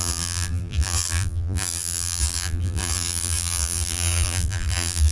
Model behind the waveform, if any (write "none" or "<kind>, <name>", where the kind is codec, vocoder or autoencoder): vocoder, BigVGAN v2